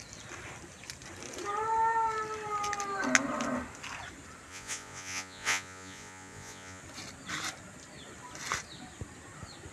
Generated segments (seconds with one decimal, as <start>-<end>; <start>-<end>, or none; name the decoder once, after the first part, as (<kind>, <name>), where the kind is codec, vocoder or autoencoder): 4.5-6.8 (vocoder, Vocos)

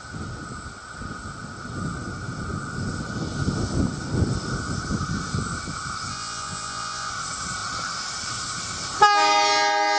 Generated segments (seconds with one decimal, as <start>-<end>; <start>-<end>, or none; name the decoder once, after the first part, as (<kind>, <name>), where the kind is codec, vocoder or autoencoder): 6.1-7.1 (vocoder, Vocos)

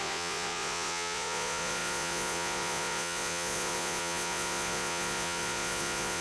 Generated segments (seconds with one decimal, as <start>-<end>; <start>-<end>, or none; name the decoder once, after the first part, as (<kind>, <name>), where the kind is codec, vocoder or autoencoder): 0.0-6.2 (vocoder, Vocos)